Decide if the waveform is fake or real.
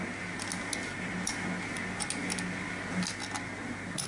real